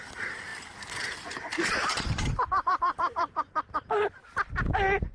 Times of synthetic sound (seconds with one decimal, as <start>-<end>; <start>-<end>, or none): 1.9-4.2